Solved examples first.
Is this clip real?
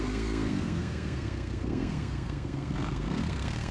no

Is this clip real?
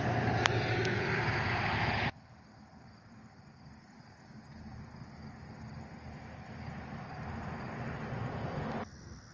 yes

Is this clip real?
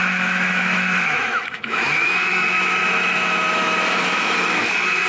no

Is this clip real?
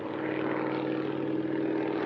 yes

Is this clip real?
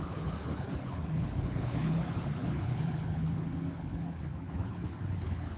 no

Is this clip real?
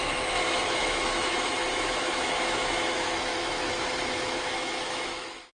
no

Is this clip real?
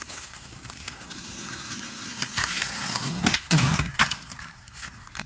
no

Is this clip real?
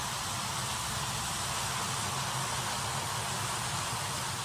yes